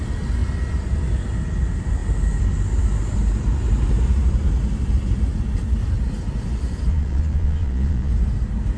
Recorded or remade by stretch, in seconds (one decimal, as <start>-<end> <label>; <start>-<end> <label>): 0.0-6.9 recorded; 6.9-8.1 remade; 8.1-8.8 recorded

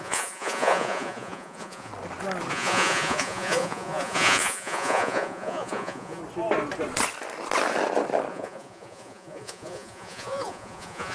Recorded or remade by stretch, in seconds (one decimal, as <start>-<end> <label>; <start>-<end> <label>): 0.0-1.9 remade; 1.9-2.5 recorded; 2.5-6.2 remade; 6.2-8.3 recorded; 8.3-11.1 remade

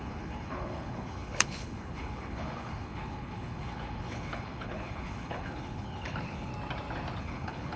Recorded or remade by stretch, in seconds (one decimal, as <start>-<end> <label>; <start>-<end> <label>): 0.0-6.5 remade; 6.5-7.2 recorded; 7.2-7.8 remade